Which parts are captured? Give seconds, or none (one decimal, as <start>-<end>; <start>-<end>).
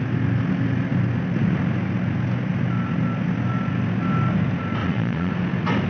0.0-4.8; 5.3-5.9